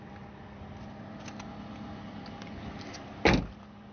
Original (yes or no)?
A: yes